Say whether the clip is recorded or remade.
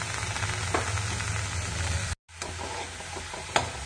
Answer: recorded